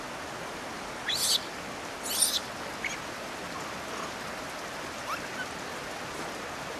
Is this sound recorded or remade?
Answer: recorded